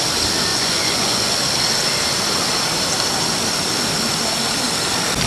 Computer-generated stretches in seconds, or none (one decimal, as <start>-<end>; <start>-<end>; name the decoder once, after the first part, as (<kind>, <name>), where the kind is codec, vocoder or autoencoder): 0.5-1.2 (vocoder, Vocos)

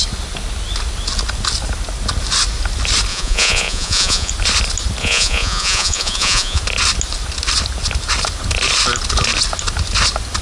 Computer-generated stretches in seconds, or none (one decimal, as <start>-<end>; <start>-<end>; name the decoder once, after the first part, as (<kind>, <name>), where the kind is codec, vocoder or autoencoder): 3.1-4.3 (vocoder, Vocos); 5.0-6.6

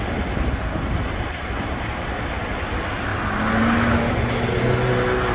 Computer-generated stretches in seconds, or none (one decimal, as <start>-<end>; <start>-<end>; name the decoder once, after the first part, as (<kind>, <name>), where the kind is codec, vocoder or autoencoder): none

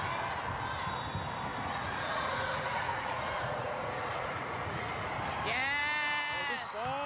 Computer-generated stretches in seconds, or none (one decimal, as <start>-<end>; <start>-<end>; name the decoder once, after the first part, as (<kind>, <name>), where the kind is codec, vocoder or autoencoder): 1.5-5.1 (vocoder, Vocos)

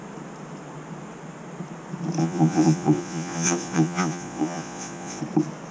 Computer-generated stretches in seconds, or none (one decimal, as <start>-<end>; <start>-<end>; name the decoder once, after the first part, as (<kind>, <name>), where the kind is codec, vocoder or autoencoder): 2.2-5.2 (vocoder, Vocos)

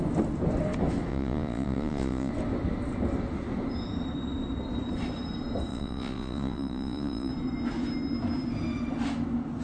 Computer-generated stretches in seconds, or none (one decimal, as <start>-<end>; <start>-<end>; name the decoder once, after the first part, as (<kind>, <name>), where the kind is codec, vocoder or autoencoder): 1.1-2.3 (vocoder, Vocos); 5.7-7.3

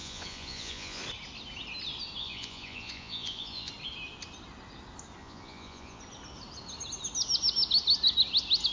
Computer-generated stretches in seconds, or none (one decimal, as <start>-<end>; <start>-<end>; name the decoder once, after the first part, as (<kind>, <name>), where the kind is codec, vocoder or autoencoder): 0.0-1.0 (vocoder, Vocos); 2.2-3.7; 5.2-6.0